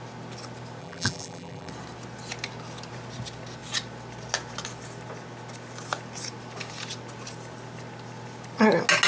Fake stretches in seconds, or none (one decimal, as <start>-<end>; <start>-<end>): 0.8-1.7